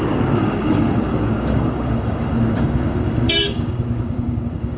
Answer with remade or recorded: remade